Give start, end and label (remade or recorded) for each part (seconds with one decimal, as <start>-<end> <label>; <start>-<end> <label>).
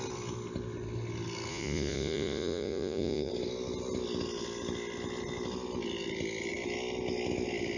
0.0-1.5 recorded; 1.5-3.3 remade; 3.3-7.8 recorded